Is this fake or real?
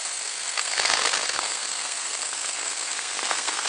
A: fake